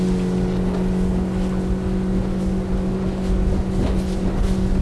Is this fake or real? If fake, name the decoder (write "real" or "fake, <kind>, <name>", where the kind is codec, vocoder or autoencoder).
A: real